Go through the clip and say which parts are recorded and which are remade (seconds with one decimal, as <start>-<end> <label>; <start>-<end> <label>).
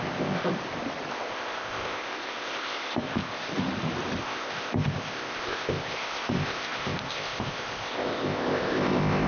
0.0-0.5 remade; 0.5-1.1 recorded; 1.1-3.5 remade; 3.5-4.2 recorded; 4.2-9.3 remade